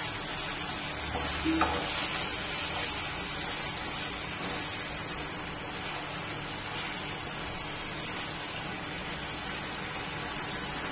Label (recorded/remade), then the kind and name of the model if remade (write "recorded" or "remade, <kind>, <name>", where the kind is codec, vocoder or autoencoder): recorded